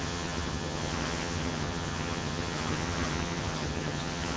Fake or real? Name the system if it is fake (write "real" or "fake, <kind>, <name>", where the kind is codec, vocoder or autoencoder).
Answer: fake, vocoder, HiFi-GAN